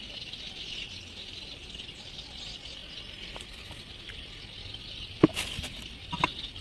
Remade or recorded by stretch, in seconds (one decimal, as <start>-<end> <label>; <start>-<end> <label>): 0.0-6.6 recorded

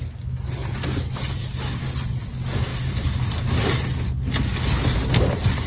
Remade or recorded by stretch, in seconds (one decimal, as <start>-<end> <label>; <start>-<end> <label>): 0.0-5.7 recorded

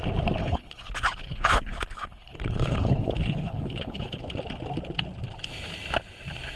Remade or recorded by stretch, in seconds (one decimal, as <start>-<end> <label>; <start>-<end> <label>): 0.0-0.4 recorded; 0.4-4.2 remade; 4.2-6.6 recorded

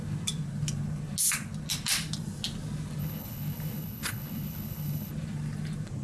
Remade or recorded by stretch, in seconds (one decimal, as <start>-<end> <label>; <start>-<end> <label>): 0.0-3.0 recorded; 3.0-5.1 remade; 5.1-6.0 recorded

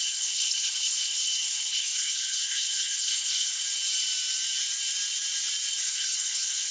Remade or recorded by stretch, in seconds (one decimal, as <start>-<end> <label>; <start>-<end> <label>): 0.0-3.6 remade; 3.6-5.8 recorded; 5.8-6.7 remade

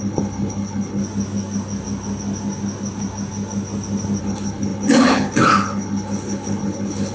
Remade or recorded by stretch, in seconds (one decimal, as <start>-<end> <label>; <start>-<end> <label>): 0.0-1.0 remade; 1.0-4.2 recorded; 4.2-7.1 remade

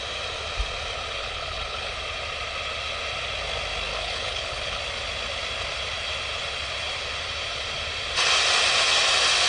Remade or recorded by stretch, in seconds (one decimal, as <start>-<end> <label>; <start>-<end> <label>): 0.0-1.2 recorded; 1.2-1.9 remade; 1.9-3.9 recorded; 3.9-4.8 remade; 4.8-9.5 recorded

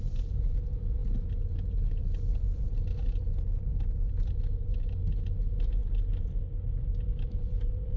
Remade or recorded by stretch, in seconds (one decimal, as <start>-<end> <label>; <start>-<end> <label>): 0.0-8.0 recorded